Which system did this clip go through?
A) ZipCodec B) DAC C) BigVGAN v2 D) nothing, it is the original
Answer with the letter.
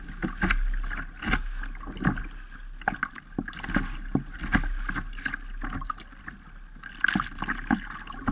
D